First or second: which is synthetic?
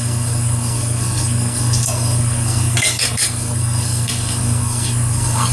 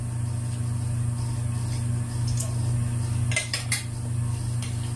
first